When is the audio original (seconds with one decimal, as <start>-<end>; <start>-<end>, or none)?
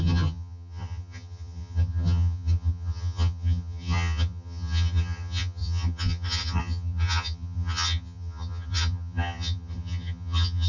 none